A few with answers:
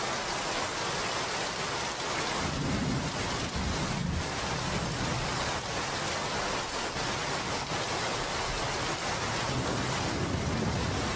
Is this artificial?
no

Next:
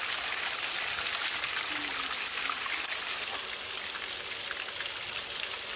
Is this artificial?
no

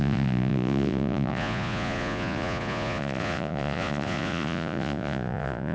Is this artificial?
yes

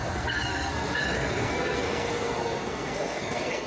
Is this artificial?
yes